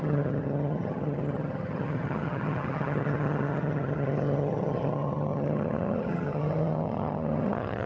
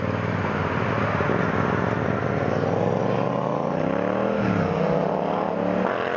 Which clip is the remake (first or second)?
first